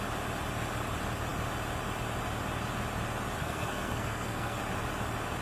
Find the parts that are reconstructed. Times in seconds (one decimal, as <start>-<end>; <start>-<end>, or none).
3.4-4.6